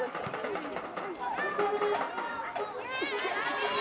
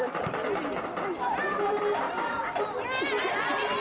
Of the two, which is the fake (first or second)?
second